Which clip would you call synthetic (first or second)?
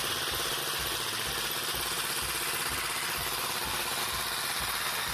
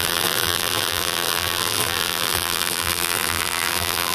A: second